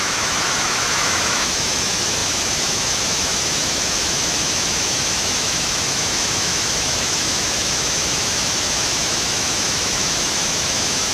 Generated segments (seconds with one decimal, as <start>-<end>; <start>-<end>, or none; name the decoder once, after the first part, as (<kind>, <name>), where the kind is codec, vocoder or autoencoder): 0.0-11.1 (autoencoder, DAC-VAE)